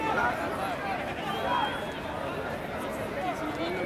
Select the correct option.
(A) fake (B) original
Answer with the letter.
B